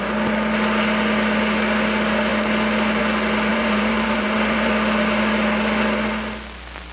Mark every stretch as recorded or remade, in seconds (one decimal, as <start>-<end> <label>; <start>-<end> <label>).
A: 0.0-3.5 recorded; 3.5-4.7 remade; 4.7-6.9 recorded